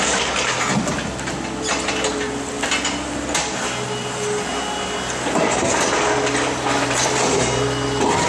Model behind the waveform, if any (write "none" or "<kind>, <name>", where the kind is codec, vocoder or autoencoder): none